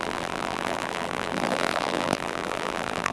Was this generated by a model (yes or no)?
yes